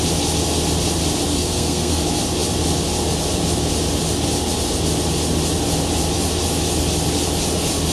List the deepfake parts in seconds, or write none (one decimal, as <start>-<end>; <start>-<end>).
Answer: 1.3-2.0